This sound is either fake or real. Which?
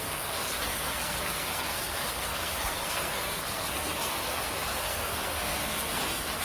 fake